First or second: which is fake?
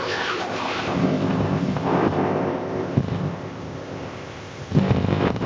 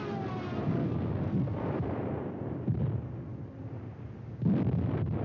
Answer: first